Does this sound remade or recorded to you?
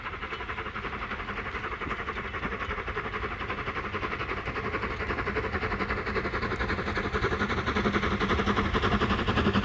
recorded